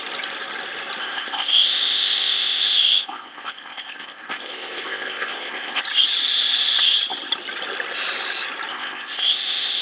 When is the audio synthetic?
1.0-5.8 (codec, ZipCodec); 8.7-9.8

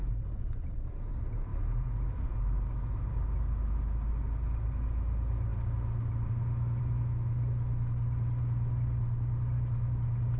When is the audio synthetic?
none

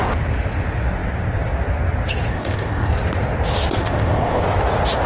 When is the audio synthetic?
2.3-2.9 (codec, ZipCodec); 3.8-4.4